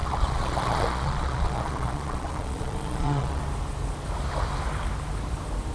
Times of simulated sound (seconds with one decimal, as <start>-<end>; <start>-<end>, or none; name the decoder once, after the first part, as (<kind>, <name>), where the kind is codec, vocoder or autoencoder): 0.0-3.4 (vocoder, Vocos)